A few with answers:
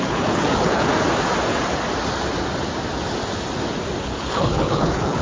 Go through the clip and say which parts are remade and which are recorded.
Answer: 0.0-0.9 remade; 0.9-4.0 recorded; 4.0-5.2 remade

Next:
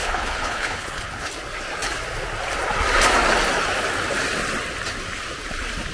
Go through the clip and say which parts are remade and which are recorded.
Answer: 0.0-1.3 remade; 1.3-5.9 recorded

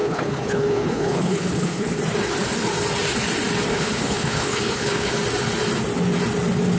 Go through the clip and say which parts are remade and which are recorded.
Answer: 0.0-2.0 remade; 2.0-3.7 recorded; 3.7-5.1 remade; 5.1-6.8 recorded

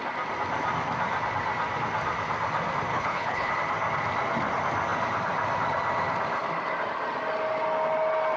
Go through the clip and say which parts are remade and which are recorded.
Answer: 0.0-2.9 recorded; 2.9-3.5 remade; 3.5-8.4 recorded